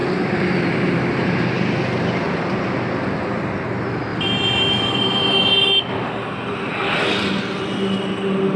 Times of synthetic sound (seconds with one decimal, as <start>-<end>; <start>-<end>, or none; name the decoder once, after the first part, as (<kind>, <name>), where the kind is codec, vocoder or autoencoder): 0.0-1.0 (vocoder, BigVGAN v2); 4.1-5.4